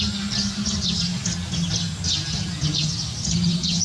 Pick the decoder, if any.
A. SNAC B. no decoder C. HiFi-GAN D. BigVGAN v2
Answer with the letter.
B